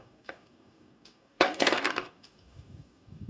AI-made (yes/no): yes